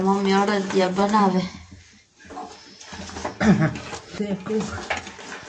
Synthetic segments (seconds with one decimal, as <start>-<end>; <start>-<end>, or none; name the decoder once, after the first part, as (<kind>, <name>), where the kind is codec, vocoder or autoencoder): 0.5-2.7 (vocoder, BigVGAN v2)